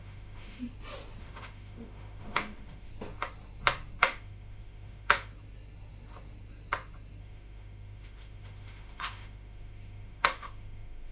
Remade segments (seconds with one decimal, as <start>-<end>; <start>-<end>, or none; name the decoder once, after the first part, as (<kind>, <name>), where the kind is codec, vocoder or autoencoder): 0.0-0.6 (autoencoder, DAC-VAE); 1.2-2.9; 4.0-5.3; 7.2-11.1